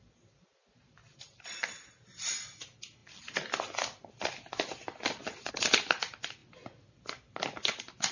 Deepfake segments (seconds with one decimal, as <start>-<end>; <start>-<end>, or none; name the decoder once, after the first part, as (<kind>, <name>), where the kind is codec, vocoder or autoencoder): none

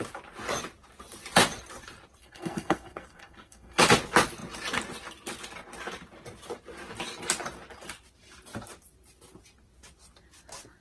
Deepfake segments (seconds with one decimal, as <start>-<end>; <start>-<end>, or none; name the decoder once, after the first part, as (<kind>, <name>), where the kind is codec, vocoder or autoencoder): 2.2-3.8 (codec, SNAC)

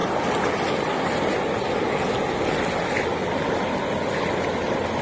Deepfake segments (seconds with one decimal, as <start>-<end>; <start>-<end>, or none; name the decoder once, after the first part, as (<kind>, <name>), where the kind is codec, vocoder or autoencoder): none

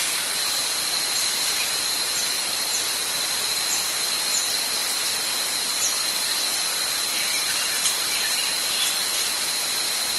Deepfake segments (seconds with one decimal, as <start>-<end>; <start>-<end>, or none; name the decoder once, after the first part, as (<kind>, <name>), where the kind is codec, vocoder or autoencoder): none

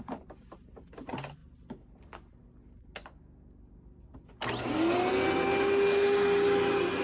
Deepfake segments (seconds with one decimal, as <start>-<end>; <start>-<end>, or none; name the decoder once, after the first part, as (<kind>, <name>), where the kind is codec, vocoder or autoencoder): none